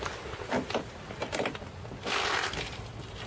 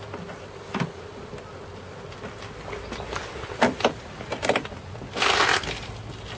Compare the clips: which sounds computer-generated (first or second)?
first